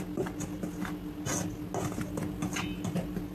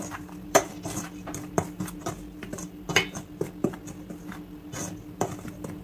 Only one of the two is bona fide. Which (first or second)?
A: first